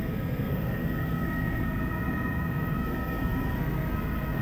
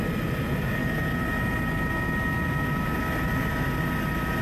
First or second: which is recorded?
second